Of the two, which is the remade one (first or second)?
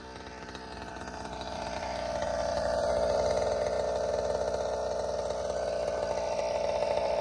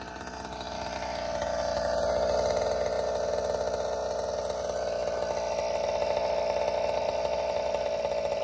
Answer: first